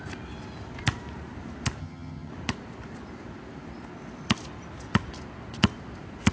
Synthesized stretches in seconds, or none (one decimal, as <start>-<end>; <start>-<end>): 1.8-2.3